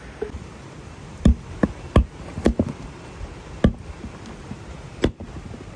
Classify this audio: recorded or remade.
recorded